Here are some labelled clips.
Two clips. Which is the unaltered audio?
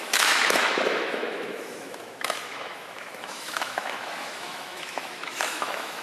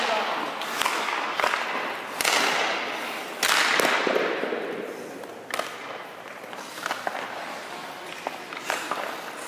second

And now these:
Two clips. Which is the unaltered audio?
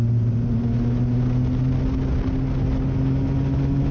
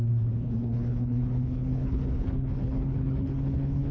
first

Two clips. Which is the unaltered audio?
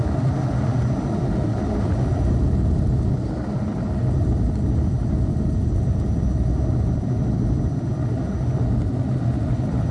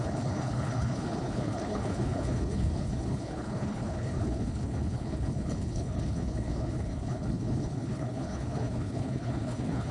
first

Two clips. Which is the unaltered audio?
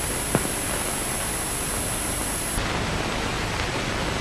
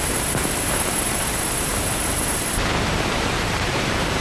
first